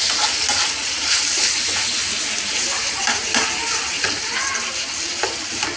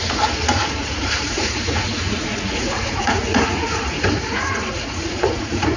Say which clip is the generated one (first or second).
second